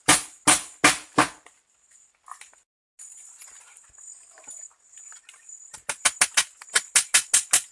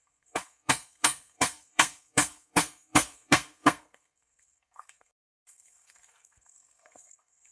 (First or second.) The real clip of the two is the first